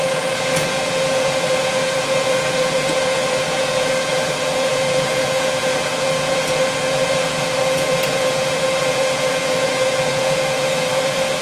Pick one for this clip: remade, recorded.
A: remade